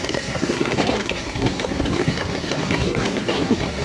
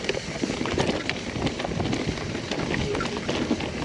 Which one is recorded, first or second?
second